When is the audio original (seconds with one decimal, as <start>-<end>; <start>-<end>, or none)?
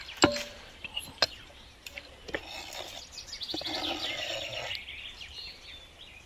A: 0.0-6.3